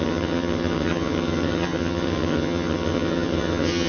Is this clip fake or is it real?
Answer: fake